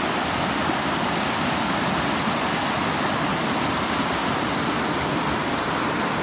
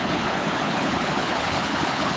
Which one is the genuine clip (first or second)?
first